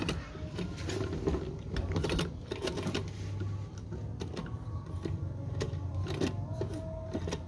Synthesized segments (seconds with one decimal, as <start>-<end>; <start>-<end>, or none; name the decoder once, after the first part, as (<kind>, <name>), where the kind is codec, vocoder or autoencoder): none